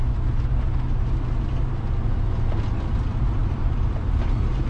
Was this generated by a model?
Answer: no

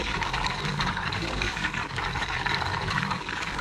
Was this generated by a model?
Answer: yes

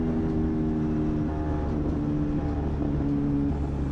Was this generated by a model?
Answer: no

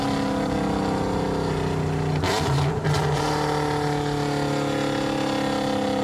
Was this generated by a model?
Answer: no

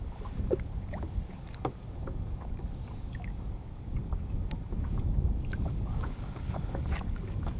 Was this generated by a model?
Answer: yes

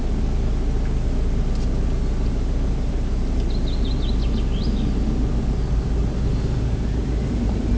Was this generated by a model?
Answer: no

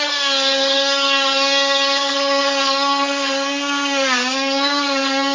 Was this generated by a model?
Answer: yes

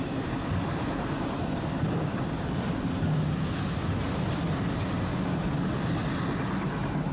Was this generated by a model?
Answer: no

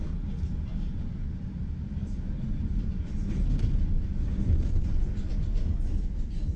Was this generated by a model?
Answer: no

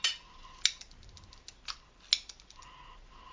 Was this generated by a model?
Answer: no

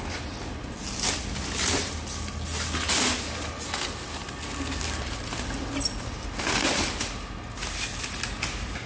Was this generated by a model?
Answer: no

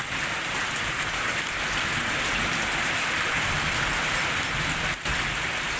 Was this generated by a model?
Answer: no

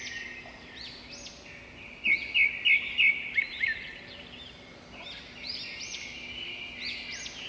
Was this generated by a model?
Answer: no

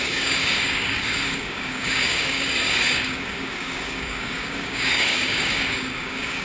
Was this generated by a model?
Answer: yes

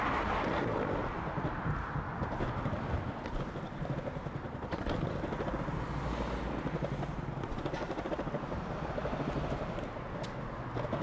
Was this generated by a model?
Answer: no